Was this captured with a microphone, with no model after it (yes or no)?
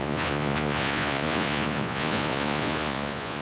no